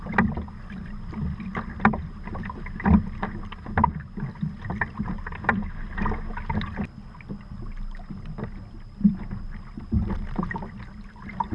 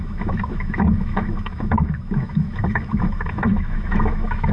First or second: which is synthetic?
second